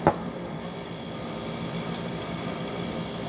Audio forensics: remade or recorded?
remade